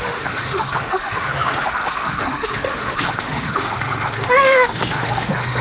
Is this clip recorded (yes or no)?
no